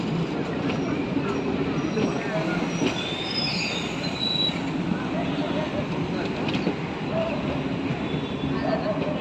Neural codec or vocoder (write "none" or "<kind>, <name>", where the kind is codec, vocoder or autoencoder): none